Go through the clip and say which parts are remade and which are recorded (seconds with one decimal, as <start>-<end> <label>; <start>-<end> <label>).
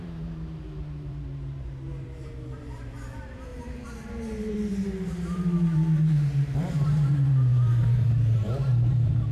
0.0-9.3 remade